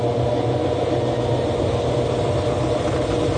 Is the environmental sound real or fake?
real